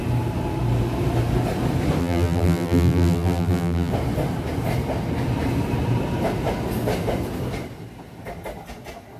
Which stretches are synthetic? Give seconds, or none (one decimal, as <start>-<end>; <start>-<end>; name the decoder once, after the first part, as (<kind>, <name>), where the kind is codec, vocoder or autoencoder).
2.0-3.9 (vocoder, BigVGAN v2)